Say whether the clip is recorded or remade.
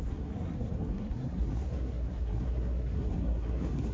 remade